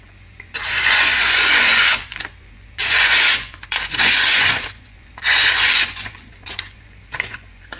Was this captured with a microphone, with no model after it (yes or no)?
no